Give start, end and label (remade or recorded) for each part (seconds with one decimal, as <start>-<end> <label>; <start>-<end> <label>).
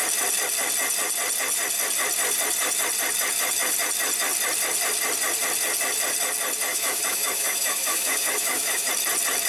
0.0-6.7 recorded; 6.7-8.9 remade; 8.9-9.5 recorded